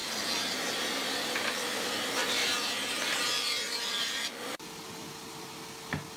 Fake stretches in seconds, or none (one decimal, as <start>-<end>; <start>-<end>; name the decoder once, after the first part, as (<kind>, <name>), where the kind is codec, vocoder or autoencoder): 0.0-4.3 (vocoder, BigVGAN v2)

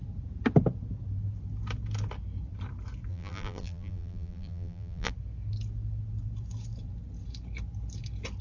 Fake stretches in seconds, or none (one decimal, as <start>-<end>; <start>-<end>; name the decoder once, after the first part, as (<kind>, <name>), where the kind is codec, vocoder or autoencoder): 3.1-5.1 (vocoder, BigVGAN v2)

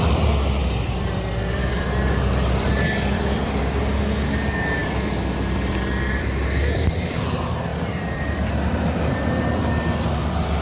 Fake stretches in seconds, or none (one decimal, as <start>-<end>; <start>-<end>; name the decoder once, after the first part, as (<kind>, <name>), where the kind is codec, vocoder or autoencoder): 0.6-3.6 (vocoder, BigVGAN v2); 4.8-7.2; 7.7-10.2

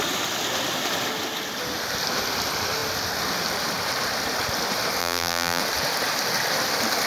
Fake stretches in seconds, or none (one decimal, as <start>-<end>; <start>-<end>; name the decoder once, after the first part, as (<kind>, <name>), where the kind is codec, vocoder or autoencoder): 5.0-5.6 (vocoder, BigVGAN v2)

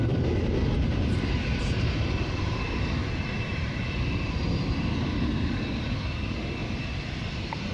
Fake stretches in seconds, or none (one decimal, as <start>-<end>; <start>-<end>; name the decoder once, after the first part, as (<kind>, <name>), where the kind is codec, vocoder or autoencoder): 0.9-1.6 (vocoder, BigVGAN v2); 3.0-3.8